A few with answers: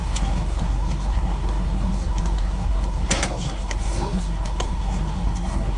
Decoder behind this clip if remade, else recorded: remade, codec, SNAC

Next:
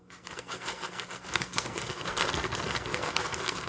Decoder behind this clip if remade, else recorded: remade, codec, SNAC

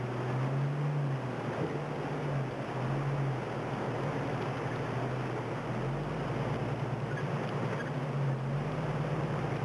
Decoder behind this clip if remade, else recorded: recorded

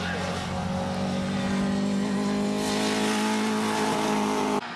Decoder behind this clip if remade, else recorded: recorded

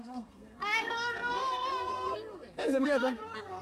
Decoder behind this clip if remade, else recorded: remade, codec, SNAC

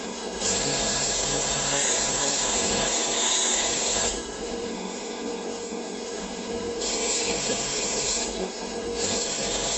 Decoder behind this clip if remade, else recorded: remade, codec, SNAC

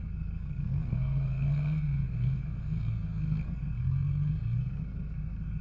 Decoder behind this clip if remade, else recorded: remade, codec, SNAC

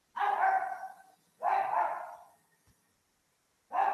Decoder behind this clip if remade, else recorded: recorded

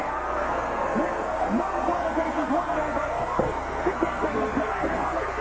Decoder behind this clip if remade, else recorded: remade, codec, SNAC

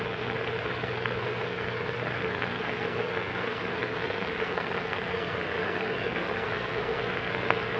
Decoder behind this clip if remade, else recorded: remade, codec, SNAC